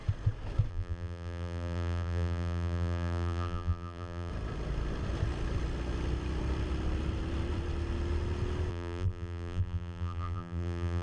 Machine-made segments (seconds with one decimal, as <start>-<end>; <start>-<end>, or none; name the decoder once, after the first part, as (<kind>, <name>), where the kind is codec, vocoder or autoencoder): 0.7-4.3 (vocoder, BigVGAN v2); 8.7-11.0